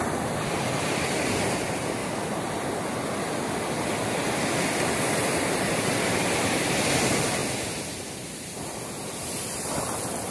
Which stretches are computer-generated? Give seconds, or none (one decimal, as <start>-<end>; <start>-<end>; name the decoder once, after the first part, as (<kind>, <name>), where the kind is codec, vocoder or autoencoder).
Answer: 0.0-2.0 (vocoder, BigVGAN v2); 4.4-7.4; 8.1-10.3